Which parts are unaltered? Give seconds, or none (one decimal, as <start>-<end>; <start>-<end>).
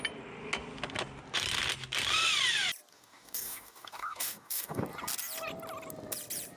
0.0-2.9; 4.8-6.6